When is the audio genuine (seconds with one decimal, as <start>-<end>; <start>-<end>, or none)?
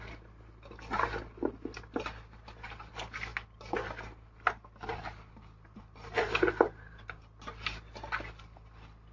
0.0-9.1